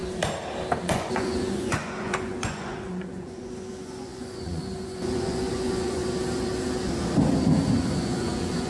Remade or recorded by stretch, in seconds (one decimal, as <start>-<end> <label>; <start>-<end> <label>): 0.0-0.8 recorded; 0.8-6.0 remade; 6.0-7.7 recorded; 7.7-8.7 remade